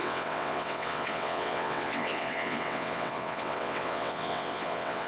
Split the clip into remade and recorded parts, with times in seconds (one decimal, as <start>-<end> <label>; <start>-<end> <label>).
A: 0.0-5.1 remade